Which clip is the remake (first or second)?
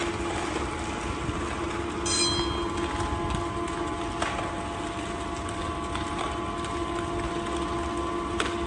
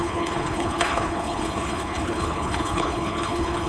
second